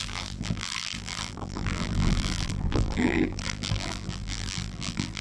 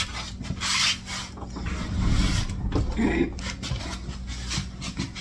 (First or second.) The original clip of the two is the second